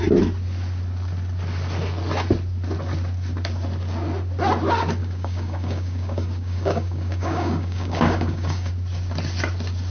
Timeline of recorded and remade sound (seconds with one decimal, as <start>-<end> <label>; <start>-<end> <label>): 0.0-5.0 recorded; 5.0-8.7 remade; 8.7-9.9 recorded